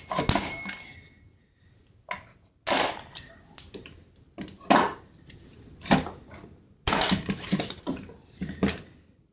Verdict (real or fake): real